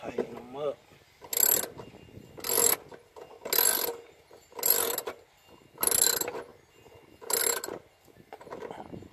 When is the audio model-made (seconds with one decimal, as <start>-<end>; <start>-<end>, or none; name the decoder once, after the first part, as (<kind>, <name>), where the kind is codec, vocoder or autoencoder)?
none